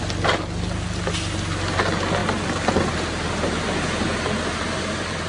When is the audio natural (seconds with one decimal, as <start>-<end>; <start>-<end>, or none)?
0.0-5.3